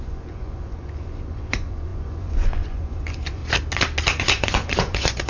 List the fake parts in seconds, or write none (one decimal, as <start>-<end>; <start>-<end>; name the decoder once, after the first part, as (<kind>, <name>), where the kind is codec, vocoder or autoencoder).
0.0-3.4 (vocoder, Vocos); 4.2-5.3